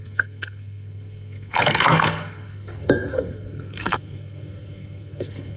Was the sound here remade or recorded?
remade